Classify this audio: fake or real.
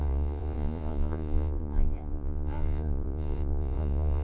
fake